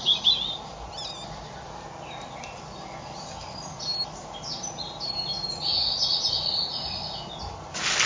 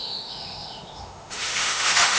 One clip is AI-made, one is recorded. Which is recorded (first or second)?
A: first